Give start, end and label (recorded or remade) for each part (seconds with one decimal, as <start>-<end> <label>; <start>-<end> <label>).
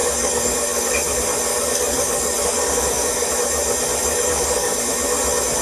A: 0.0-0.9 remade; 0.9-1.5 recorded; 1.5-3.3 remade; 3.3-4.0 recorded; 4.0-4.8 remade; 4.8-5.6 recorded